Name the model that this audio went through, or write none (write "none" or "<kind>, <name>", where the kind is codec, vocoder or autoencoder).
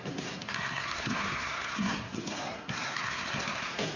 codec, SNAC